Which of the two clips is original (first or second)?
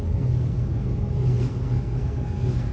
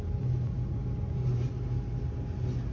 second